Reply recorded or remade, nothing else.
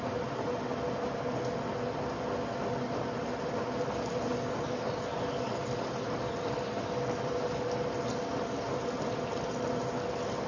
recorded